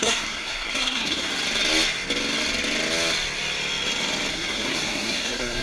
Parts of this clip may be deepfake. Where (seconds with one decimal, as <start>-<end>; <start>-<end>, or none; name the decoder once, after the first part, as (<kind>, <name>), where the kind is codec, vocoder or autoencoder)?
0.0-1.3 (codec, SNAC); 4.3-5.6